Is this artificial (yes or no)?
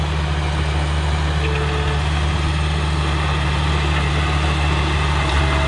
no